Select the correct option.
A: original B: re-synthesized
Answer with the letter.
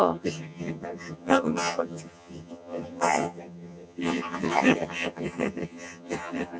B